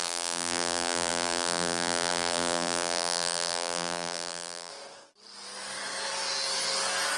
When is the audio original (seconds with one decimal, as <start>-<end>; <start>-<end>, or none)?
4.7-7.2